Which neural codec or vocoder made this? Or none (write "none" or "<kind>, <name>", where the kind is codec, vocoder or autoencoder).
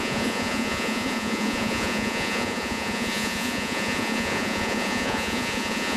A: vocoder, Vocos